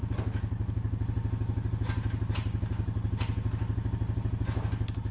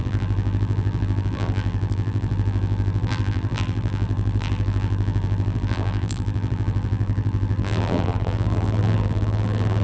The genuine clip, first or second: first